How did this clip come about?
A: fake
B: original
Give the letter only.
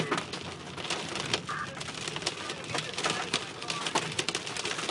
B